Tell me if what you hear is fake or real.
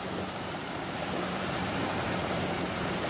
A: fake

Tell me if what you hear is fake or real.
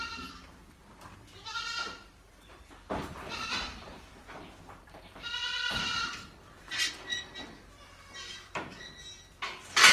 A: fake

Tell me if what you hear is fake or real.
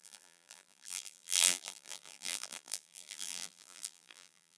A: fake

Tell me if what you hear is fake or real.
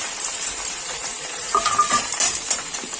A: fake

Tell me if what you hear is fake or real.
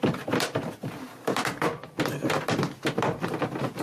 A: real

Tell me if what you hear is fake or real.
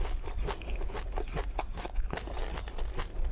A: real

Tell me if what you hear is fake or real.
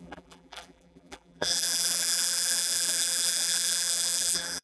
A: fake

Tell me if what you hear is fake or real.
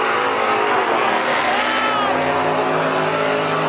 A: real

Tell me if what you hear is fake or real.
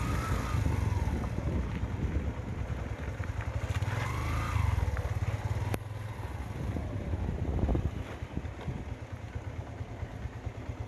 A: real